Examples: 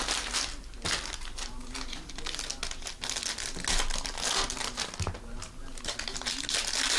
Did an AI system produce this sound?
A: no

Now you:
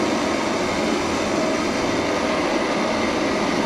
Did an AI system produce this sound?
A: no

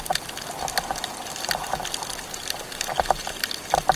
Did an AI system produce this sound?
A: no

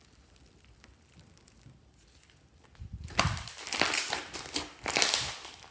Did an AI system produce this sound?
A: no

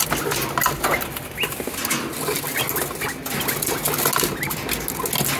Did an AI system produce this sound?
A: no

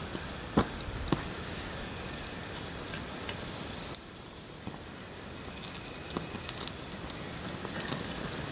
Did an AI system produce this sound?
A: no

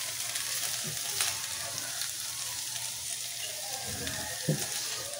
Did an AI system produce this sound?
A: yes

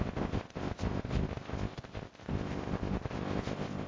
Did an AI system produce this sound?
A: yes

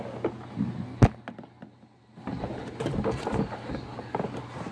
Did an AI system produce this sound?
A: no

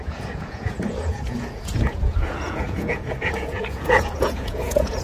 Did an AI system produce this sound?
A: yes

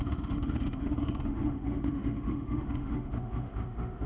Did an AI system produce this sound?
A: yes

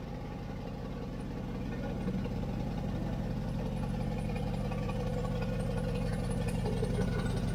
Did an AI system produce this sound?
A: no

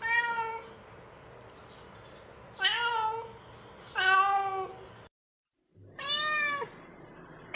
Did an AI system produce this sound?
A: no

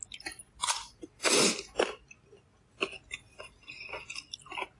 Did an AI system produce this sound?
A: no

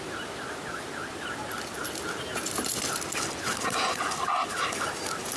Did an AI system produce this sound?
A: no